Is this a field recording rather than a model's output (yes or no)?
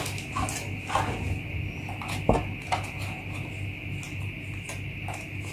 yes